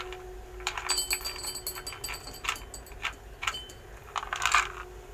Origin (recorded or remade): recorded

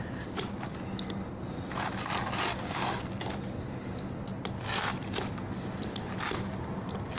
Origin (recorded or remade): recorded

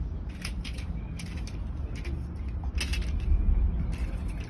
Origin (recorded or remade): recorded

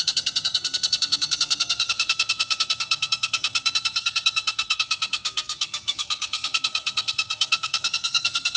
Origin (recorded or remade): remade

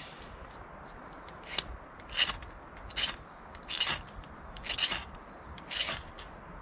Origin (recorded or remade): recorded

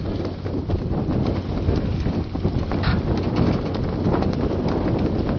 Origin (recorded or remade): recorded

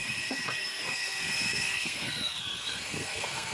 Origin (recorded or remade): remade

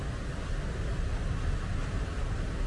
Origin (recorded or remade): recorded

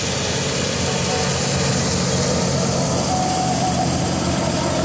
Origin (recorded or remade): recorded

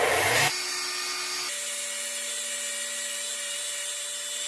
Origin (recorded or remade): recorded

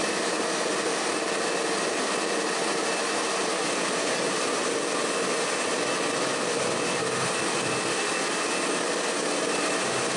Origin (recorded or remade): recorded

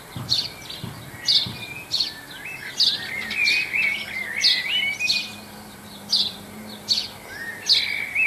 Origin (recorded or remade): recorded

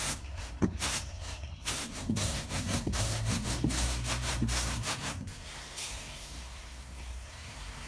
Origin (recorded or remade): remade